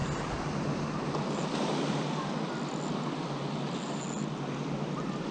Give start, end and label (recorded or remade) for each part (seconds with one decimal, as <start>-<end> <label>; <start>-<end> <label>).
0.0-5.3 recorded